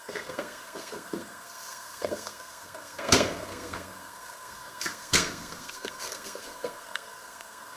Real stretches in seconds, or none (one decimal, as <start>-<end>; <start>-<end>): none